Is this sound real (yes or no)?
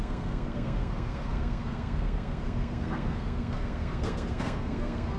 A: no